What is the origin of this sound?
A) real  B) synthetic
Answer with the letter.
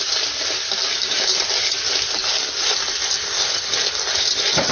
A